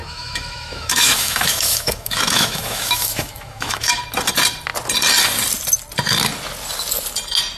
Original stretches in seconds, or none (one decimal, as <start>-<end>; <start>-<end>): 4.0-7.6